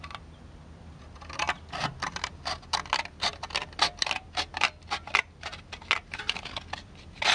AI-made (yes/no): no